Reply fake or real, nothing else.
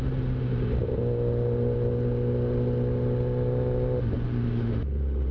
real